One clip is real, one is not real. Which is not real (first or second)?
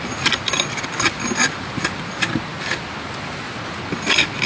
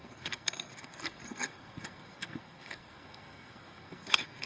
second